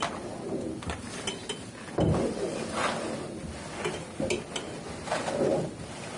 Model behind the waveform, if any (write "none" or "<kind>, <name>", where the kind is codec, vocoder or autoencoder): none